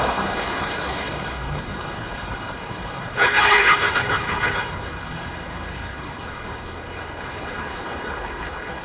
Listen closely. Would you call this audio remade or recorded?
remade